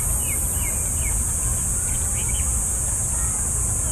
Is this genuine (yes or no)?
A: yes